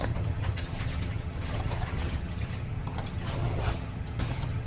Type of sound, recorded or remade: remade